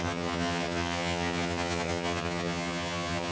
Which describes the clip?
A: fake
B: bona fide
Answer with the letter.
A